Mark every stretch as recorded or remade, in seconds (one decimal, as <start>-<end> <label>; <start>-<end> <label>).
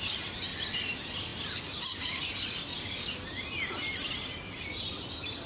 0.0-5.5 recorded